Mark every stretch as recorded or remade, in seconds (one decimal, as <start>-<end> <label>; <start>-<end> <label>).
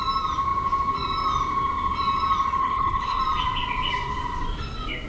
0.0-2.6 recorded; 2.6-3.2 remade; 3.2-5.1 recorded